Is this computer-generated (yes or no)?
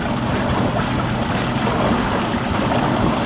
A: no